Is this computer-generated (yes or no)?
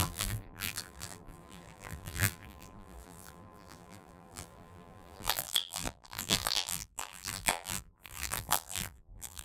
yes